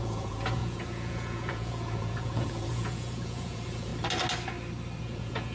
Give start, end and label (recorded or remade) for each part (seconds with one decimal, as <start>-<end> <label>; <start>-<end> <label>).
0.0-3.9 remade; 3.9-5.0 recorded; 5.0-5.5 remade